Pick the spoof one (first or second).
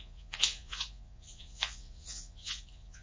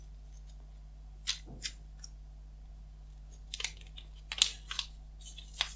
first